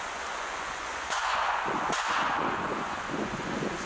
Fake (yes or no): yes